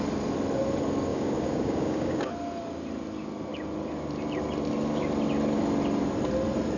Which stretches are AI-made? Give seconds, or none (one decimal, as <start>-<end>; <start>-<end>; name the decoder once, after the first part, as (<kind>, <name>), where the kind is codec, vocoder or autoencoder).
1.1-2.3 (codec, DAC)